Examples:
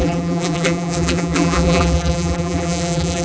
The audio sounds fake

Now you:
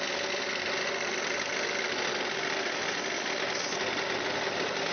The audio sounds real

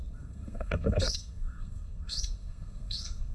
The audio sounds fake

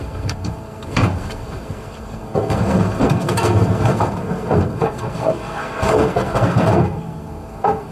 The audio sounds fake